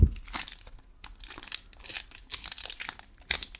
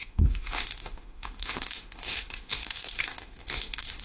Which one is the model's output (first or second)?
second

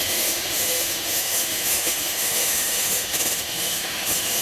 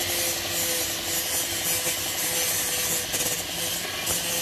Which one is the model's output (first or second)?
first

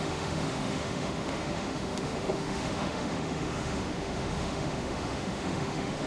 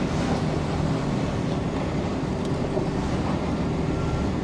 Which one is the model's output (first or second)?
first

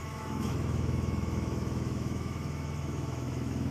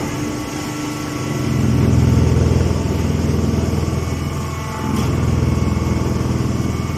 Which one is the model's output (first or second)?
first